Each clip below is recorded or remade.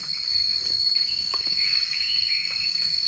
remade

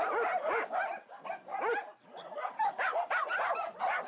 recorded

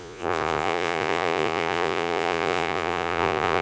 remade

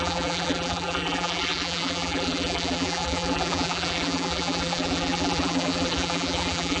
remade